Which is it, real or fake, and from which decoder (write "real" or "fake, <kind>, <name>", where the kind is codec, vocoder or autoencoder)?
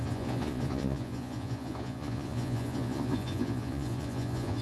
fake, vocoder, Vocos